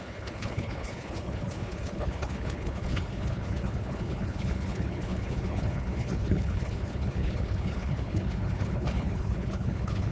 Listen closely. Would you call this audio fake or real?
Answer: fake